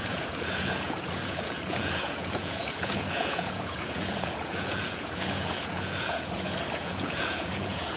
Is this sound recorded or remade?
remade